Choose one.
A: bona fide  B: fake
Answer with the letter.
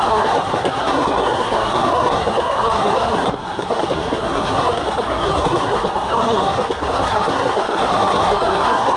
B